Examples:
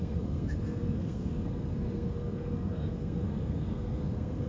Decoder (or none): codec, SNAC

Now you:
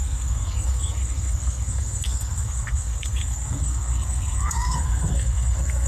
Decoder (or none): codec, SNAC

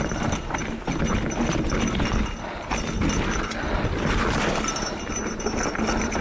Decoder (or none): none